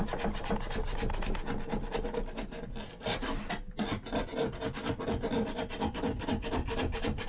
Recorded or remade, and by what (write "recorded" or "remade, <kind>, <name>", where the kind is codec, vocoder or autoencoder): recorded